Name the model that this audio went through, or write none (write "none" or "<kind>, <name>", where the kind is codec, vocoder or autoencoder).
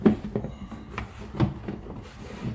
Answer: none